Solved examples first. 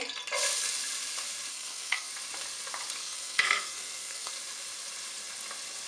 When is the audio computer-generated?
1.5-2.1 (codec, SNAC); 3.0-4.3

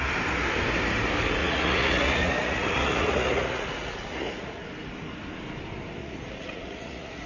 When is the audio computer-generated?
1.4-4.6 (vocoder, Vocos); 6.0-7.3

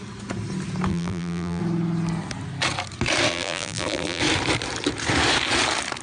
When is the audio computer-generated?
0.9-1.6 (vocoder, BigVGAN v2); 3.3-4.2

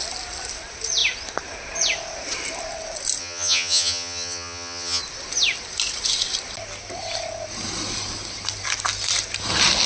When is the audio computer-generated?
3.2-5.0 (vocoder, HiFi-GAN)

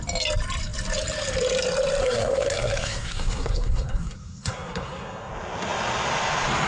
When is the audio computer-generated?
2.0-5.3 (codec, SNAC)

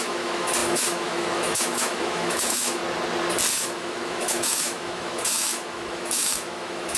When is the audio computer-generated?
0.0-2.8 (autoencoder, DAC-VAE); 3.5-7.0

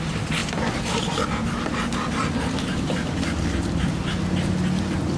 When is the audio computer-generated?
none